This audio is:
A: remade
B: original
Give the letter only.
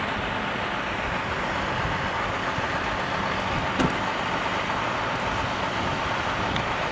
B